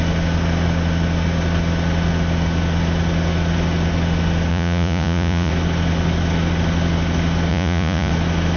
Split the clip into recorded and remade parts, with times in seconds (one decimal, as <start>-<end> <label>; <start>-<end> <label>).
0.0-4.5 recorded; 4.5-5.5 remade; 5.5-7.5 recorded; 7.5-8.1 remade; 8.1-8.6 recorded